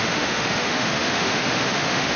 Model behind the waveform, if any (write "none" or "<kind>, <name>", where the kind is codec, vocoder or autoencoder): autoencoder, DAC-VAE